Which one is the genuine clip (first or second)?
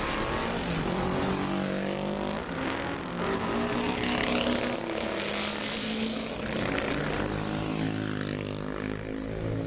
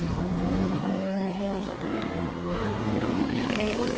first